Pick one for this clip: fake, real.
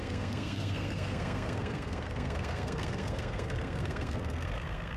fake